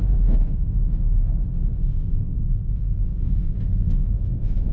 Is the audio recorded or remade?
remade